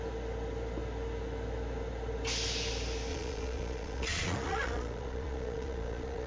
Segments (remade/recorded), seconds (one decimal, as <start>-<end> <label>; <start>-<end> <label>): 0.0-3.1 recorded; 3.1-6.3 remade